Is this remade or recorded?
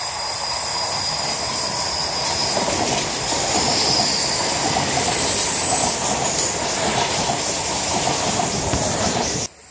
recorded